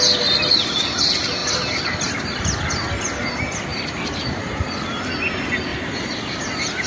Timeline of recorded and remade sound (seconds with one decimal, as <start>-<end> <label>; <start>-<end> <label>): 0.0-3.7 recorded; 3.7-5.1 remade; 5.1-5.7 recorded; 5.7-6.9 remade